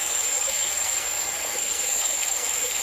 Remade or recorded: remade